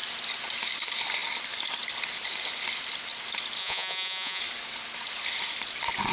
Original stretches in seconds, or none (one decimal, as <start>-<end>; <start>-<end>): 0.0-3.6; 4.4-6.1